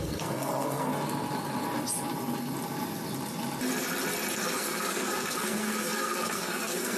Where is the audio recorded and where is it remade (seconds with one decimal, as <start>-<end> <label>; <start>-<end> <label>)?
0.0-0.9 remade; 0.9-4.4 recorded; 4.4-7.0 remade